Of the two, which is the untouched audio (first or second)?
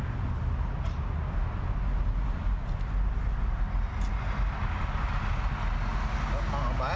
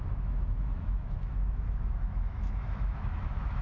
first